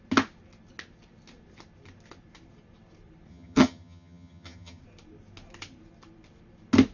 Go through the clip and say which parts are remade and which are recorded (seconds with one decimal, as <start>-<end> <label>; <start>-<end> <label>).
0.0-3.3 recorded; 3.3-4.8 remade; 4.8-6.9 recorded

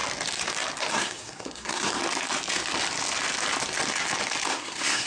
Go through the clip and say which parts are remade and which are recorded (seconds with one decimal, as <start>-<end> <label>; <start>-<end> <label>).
0.0-0.9 recorded; 0.9-2.0 remade; 2.0-4.6 recorded; 4.6-5.1 remade